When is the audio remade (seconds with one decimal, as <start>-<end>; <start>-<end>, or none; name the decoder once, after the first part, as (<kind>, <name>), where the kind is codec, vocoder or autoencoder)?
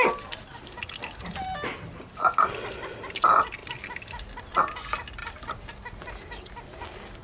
5.2-5.7 (vocoder, BigVGAN v2)